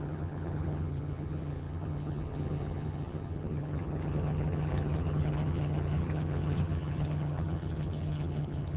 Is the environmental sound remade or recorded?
remade